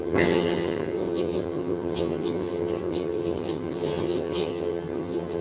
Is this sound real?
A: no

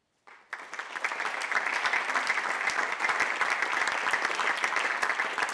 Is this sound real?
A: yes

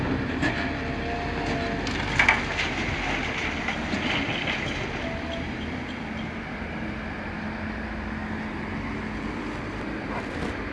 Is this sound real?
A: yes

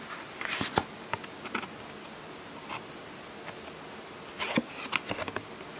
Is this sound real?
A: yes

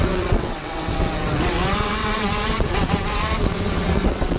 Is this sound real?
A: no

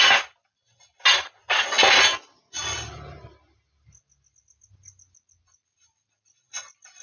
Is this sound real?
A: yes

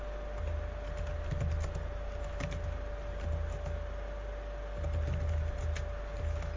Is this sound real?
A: yes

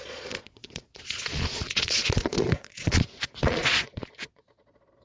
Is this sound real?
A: no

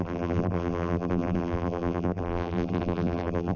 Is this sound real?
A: no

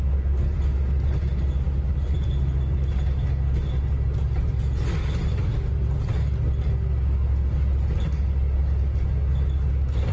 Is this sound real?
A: yes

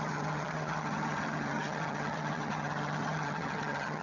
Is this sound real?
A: no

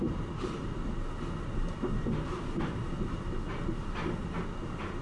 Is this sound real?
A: yes